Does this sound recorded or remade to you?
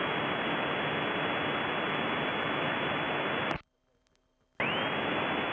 recorded